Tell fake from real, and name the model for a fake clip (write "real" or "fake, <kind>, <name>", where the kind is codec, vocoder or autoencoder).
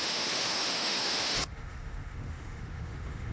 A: fake, autoencoder, DAC-VAE